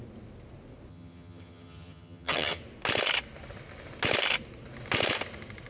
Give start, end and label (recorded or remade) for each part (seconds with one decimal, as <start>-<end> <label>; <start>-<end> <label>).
0.0-0.9 recorded; 0.9-2.6 remade; 2.6-5.7 recorded